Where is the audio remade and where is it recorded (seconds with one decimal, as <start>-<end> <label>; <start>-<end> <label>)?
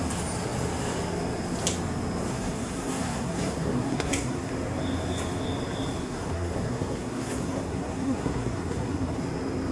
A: 0.0-2.3 recorded; 2.3-4.5 remade; 4.5-6.0 recorded; 6.0-9.2 remade; 9.2-9.7 recorded